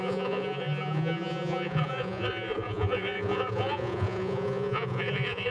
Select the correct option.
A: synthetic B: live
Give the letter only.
A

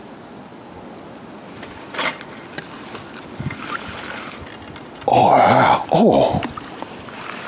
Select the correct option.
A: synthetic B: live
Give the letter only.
B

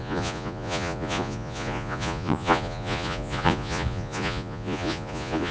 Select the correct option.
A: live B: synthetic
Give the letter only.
B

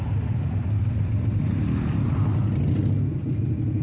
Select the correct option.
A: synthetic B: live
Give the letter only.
B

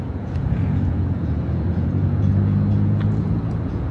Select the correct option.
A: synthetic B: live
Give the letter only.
A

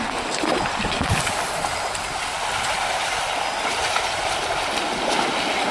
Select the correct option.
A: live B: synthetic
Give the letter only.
A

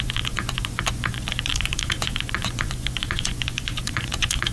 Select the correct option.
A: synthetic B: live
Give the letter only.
A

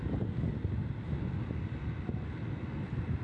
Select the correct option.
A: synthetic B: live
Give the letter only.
B